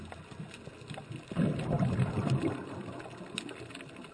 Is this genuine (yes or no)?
yes